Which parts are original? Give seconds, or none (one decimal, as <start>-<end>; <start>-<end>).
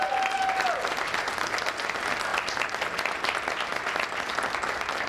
0.0-5.1